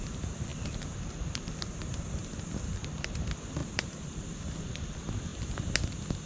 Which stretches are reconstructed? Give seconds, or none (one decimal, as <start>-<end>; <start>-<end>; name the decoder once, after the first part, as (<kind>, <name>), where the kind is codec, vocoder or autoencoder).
3.6-4.2 (vocoder, BigVGAN v2)

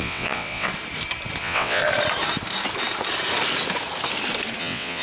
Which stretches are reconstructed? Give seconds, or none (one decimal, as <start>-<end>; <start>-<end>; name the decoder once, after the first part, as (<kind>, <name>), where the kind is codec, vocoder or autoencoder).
0.0-0.7 (vocoder, WaveNeXt); 1.4-1.8; 4.6-5.0